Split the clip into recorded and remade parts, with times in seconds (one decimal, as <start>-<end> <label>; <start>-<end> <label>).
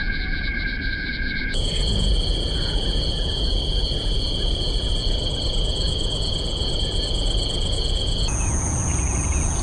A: 0.0-0.5 remade; 0.5-1.1 recorded; 1.1-9.6 remade